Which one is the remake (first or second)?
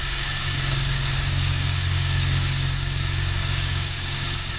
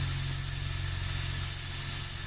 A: first